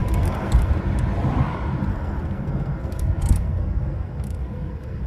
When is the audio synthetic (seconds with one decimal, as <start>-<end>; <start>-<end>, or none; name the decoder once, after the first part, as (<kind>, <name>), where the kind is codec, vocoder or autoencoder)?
0.0-0.7 (codec, SNAC); 1.9-5.1